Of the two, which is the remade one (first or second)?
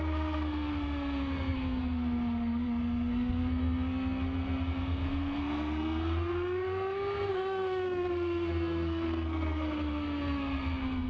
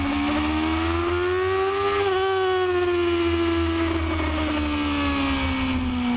first